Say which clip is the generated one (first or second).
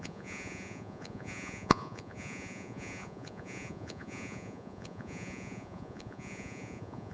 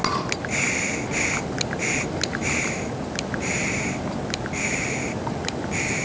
first